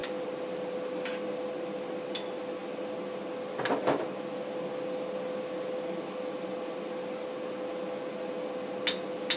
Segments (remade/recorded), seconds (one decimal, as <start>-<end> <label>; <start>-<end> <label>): 0.0-9.4 recorded